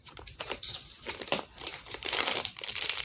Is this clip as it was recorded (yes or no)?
no